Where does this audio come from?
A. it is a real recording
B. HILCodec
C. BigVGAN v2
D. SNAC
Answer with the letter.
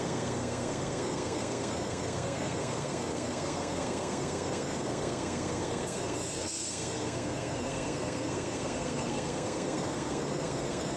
D